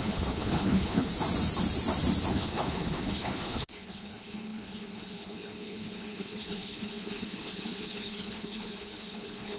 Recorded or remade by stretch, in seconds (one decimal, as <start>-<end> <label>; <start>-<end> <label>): 0.0-1.1 remade; 1.1-2.3 recorded; 2.3-9.6 remade